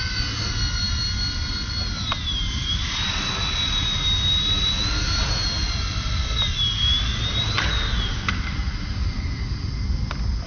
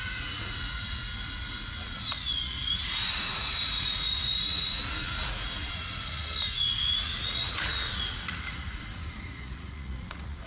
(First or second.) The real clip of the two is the first